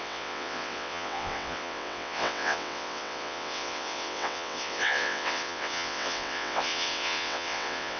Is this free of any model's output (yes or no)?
no